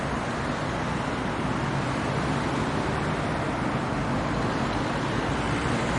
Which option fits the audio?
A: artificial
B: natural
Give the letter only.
B